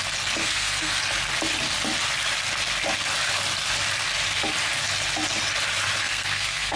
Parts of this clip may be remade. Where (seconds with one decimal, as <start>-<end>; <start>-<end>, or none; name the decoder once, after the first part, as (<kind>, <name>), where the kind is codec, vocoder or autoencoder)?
0.4-1.0 (codec, SNAC); 6.0-6.8